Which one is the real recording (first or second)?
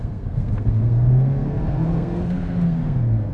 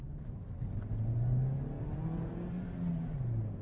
second